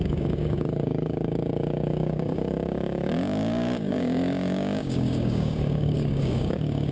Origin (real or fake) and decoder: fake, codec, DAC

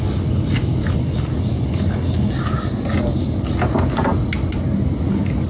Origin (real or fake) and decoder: real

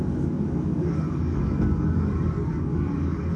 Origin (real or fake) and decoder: fake, codec, DAC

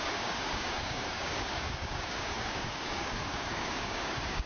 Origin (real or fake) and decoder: fake, codec, DAC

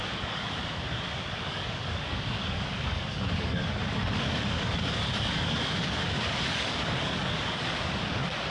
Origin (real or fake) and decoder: fake, codec, DAC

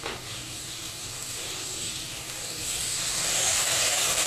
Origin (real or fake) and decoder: fake, codec, DAC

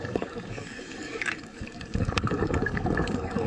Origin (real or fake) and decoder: fake, codec, DAC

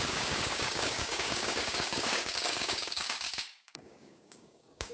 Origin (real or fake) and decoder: fake, codec, DAC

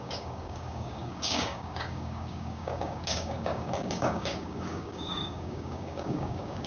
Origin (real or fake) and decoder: fake, codec, DAC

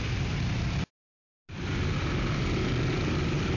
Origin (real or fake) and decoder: real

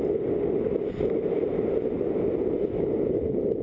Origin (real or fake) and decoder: real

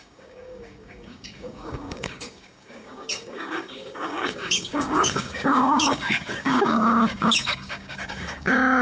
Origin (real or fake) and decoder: fake, codec, DAC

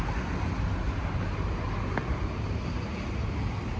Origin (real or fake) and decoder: real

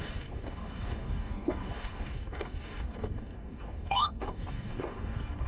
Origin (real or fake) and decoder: fake, codec, DAC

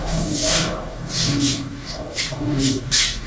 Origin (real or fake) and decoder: fake, codec, DAC